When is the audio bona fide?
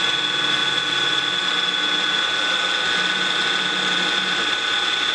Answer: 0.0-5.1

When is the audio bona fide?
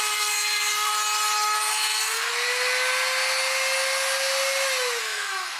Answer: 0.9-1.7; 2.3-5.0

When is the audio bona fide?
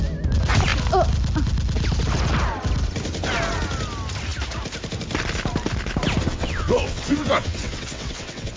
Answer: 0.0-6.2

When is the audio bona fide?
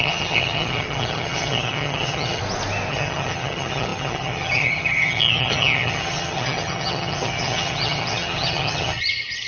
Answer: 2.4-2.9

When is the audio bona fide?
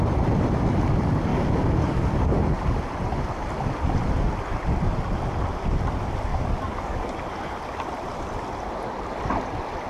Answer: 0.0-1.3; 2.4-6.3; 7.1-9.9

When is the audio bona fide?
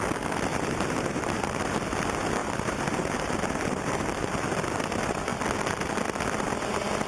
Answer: 0.0-0.5; 1.8-2.4; 4.3-7.1